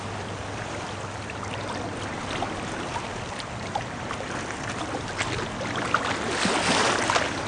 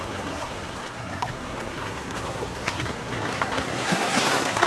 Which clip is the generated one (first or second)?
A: second